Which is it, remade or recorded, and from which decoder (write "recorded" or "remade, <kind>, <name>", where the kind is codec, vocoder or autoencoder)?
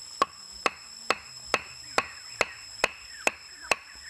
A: recorded